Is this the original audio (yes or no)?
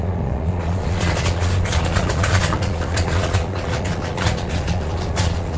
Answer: no